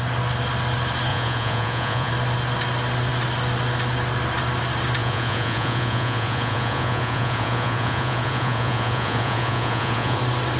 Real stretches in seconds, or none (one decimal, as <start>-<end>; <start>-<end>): 0.0-1.1; 2.1-5.0; 10.2-10.6